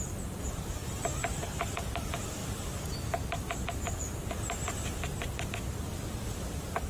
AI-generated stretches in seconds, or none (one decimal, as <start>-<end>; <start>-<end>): none